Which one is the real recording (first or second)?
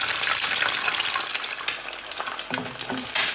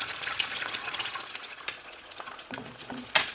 first